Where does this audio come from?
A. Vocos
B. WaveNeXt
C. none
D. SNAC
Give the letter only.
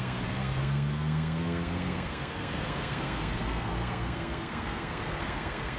D